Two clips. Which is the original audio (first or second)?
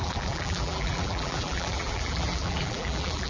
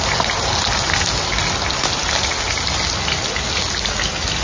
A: second